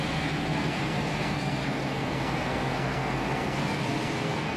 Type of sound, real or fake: fake